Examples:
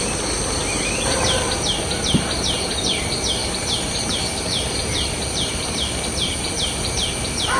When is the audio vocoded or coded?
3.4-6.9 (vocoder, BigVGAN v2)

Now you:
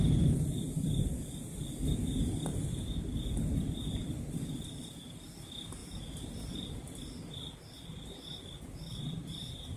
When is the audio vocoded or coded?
none